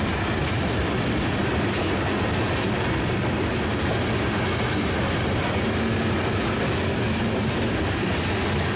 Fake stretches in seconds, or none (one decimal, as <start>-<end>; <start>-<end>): none